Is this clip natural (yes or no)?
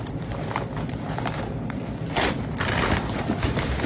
no